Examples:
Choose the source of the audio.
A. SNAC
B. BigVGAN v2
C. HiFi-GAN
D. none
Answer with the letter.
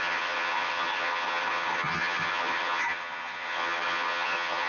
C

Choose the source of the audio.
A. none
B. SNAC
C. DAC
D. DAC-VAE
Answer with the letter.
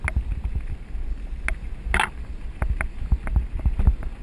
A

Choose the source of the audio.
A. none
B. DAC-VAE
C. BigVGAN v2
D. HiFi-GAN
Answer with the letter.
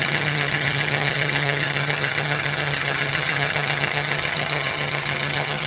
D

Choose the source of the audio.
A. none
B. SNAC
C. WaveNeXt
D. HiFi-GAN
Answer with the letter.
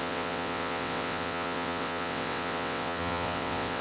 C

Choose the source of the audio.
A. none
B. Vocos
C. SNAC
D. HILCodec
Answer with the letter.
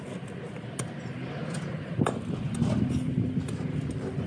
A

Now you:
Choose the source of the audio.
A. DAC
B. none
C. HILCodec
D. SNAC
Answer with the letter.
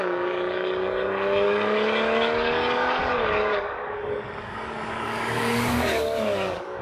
A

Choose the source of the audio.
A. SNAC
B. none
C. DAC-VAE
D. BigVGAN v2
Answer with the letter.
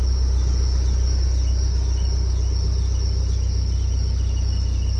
B